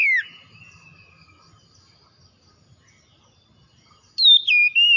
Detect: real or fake real